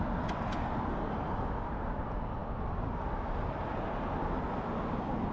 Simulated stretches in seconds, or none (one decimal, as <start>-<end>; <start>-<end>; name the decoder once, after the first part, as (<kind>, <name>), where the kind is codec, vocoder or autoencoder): none